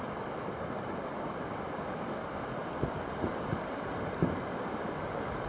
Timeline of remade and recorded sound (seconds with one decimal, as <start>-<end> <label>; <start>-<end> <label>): 0.0-5.5 recorded